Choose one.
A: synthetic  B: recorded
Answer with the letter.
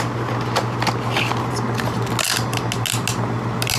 B